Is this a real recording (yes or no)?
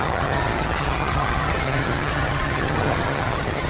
no